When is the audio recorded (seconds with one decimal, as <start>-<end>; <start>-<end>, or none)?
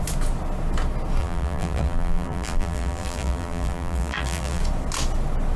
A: 0.0-1.2; 4.6-5.6